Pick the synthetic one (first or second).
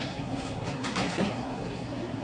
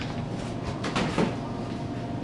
first